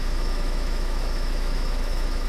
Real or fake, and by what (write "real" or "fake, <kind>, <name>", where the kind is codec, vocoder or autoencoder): fake, autoencoder, DAC-VAE